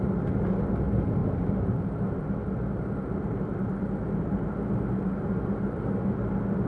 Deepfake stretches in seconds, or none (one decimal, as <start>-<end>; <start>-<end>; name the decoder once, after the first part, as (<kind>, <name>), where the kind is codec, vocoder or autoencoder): none